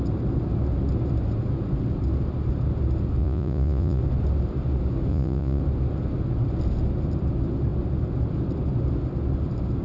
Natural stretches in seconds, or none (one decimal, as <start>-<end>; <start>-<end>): 0.0-3.2; 4.0-5.1; 5.6-9.8

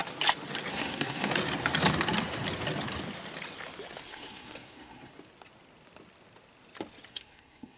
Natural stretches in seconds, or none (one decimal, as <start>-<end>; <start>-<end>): 0.0-0.7; 1.3-4.1; 5.1-7.1

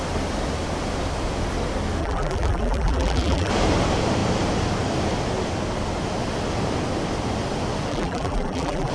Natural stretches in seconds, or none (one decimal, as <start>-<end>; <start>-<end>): 0.0-2.0; 3.5-7.9

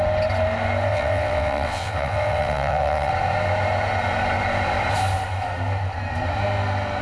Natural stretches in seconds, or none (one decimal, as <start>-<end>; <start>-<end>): 0.0-0.9; 3.1-7.0

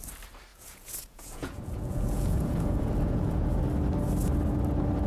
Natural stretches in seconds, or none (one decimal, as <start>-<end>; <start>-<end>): 0.0-0.5; 3.6-5.1